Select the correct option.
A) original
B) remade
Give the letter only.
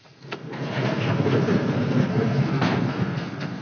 B